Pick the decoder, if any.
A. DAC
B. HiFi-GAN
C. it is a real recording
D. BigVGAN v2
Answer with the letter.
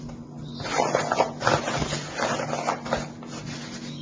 C